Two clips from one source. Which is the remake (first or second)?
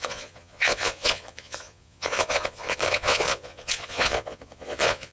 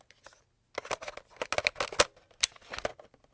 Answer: first